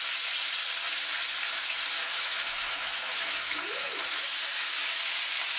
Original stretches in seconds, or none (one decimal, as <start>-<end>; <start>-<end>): 0.0-2.0; 4.0-5.6